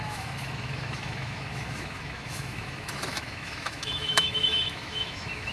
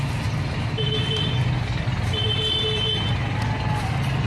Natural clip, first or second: second